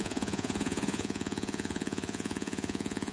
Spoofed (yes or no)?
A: yes